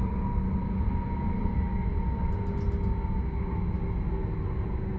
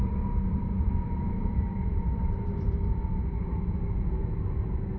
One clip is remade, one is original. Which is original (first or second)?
first